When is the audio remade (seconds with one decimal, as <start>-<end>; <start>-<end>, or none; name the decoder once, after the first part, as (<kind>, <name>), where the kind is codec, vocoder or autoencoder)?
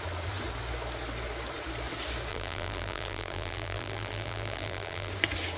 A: 2.3-5.1 (vocoder, BigVGAN v2)